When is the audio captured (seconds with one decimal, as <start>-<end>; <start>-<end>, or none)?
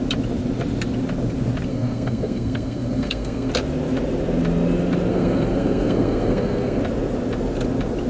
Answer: 0.0-1.7; 3.5-5.1; 6.8-8.1